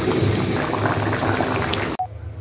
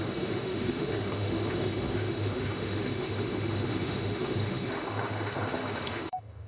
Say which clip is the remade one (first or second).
second